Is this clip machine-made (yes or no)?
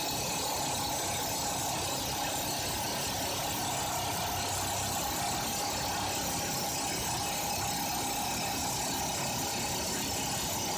no